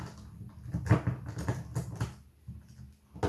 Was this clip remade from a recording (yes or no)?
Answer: no